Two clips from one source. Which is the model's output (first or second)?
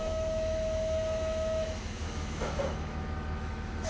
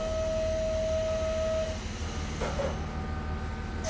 first